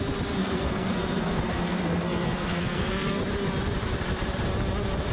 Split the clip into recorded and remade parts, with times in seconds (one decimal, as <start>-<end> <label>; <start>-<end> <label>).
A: 0.0-0.4 recorded; 0.4-3.2 remade; 3.2-5.1 recorded